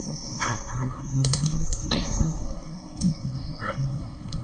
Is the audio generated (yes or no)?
yes